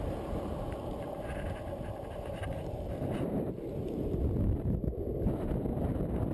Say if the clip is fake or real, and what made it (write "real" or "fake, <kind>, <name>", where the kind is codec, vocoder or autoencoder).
fake, vocoder, BigVGAN v2